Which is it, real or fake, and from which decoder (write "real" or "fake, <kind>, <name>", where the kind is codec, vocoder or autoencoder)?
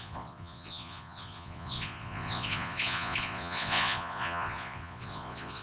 fake, vocoder, Vocos